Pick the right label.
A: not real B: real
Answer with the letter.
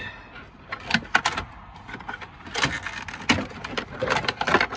B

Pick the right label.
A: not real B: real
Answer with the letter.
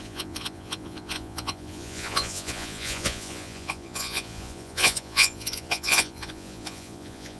A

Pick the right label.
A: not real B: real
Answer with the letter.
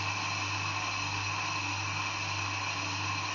B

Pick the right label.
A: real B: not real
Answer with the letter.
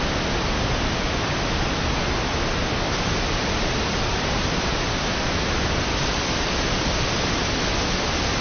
A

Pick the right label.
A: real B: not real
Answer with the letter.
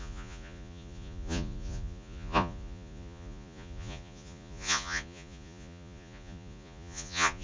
B